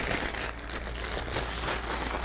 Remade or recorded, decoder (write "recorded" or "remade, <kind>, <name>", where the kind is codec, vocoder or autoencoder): recorded